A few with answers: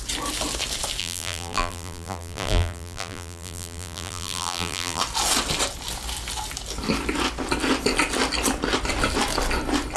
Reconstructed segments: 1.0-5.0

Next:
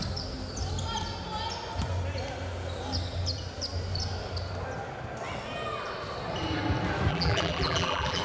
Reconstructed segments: 7.1-8.2